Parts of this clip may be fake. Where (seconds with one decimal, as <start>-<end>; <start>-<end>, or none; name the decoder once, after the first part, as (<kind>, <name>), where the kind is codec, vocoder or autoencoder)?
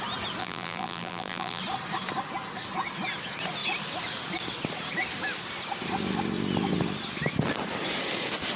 0.4-1.6 (vocoder, BigVGAN v2)